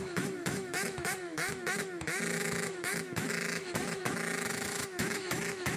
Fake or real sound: fake